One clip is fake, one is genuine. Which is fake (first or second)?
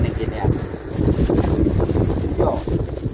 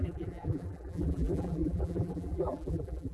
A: second